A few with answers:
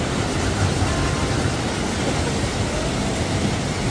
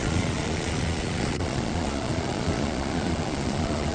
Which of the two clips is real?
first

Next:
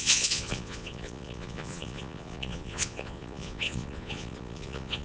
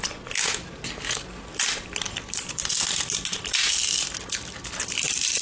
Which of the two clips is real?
second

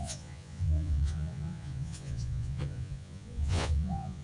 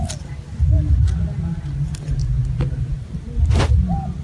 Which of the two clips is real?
second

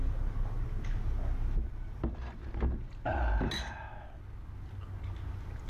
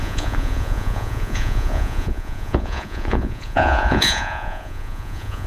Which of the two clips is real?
first